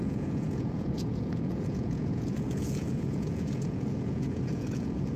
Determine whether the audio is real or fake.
fake